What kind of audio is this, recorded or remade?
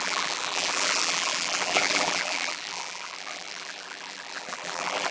remade